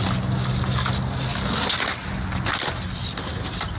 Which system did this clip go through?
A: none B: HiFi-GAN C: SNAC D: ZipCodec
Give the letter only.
A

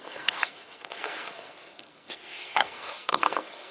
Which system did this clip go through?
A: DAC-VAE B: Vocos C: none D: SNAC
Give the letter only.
D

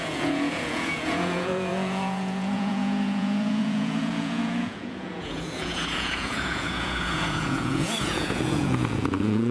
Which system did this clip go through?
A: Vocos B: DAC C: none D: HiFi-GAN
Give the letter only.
A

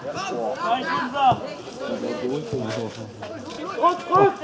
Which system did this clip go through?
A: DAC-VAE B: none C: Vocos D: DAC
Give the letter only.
B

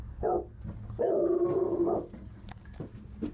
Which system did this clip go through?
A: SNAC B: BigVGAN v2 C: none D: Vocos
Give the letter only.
C